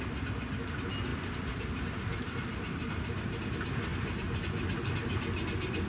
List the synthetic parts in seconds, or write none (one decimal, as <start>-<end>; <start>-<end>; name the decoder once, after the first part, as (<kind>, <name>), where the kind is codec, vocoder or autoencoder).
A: 1.1-3.5 (vocoder, BigVGAN v2); 3.9-4.4